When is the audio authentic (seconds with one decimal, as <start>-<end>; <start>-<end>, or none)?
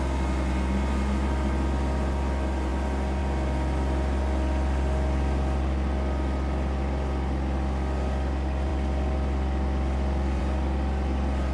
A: 0.0-11.5